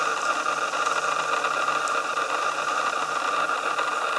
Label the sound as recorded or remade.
recorded